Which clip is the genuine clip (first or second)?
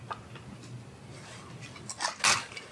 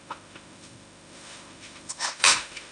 first